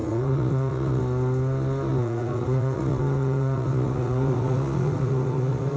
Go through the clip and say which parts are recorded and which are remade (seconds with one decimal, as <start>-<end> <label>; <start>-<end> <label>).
0.0-1.0 remade; 1.0-1.9 recorded; 1.9-5.8 remade